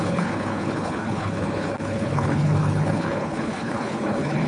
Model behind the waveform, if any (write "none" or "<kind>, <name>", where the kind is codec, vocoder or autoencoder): codec, HILCodec